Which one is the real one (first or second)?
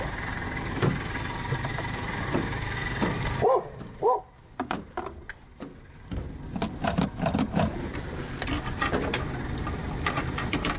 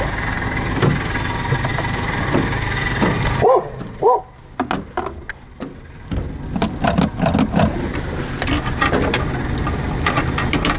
second